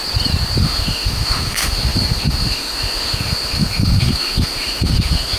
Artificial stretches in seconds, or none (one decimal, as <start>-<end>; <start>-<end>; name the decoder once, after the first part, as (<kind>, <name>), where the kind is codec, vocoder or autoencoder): 0.6-5.4 (autoencoder, DAC-VAE)